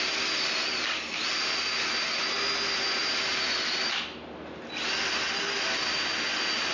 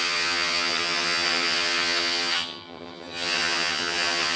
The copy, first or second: second